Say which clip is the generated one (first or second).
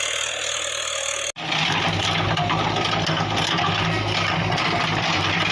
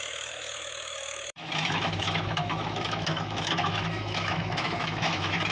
second